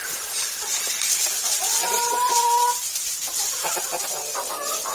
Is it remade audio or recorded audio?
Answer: recorded